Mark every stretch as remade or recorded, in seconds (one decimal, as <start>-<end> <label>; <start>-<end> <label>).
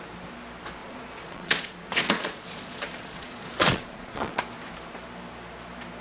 0.0-0.8 recorded; 0.8-4.4 remade; 4.4-6.0 recorded